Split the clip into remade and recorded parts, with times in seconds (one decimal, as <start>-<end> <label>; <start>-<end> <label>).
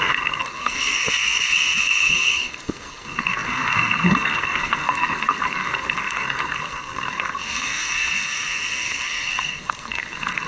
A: 0.0-10.5 remade